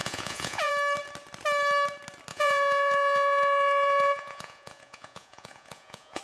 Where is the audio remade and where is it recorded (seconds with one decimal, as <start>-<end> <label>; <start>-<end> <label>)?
0.0-0.7 remade; 0.7-2.3 recorded; 2.3-6.2 remade